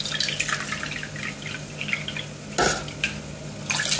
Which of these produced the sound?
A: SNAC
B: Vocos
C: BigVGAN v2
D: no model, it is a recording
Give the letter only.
D